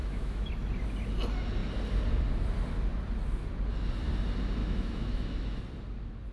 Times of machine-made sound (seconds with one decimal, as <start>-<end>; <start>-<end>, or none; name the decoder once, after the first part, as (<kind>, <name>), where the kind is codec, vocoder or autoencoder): 0.0-0.5 (autoencoder, DAC-VAE); 4.6-5.6